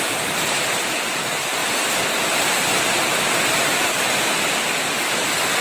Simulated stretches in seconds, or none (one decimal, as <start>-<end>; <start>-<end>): 0.0-5.6